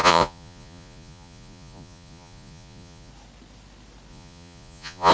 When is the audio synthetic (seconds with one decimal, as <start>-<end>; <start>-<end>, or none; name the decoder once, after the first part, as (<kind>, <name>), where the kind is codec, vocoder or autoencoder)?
0.0-3.1 (vocoder, Vocos); 4.1-5.1